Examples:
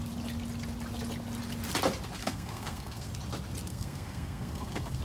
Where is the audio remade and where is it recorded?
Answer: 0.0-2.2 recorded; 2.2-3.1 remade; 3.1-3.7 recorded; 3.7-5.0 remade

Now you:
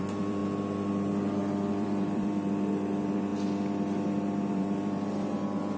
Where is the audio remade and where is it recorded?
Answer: 0.0-0.4 remade; 0.4-1.7 recorded; 1.7-3.3 remade; 3.3-4.5 recorded; 4.5-5.8 remade

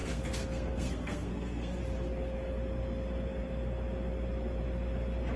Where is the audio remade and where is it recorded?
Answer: 0.0-1.8 remade; 1.8-5.4 recorded

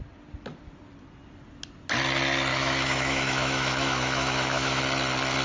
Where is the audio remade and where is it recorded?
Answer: 0.0-2.5 recorded; 2.5-4.8 remade; 4.8-5.4 recorded

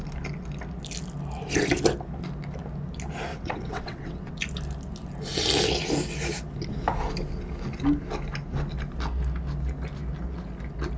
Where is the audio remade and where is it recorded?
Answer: 0.0-3.3 recorded; 3.3-4.3 remade; 4.3-11.0 recorded

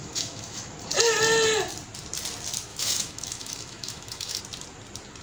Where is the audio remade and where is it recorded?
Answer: 0.0-0.7 remade; 0.7-2.7 recorded; 2.7-4.4 remade; 4.4-5.2 recorded

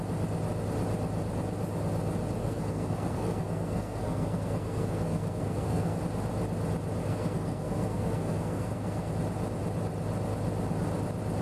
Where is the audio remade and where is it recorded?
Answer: 0.0-2.4 recorded; 2.4-6.0 remade; 6.0-7.0 recorded; 7.0-9.1 remade; 9.1-11.4 recorded